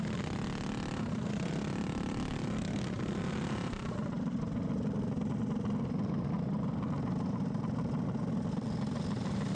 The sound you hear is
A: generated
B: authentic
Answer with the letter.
B